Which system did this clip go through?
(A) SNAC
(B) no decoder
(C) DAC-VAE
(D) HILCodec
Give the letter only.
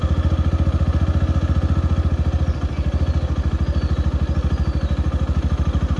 B